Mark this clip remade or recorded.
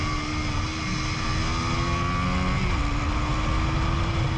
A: recorded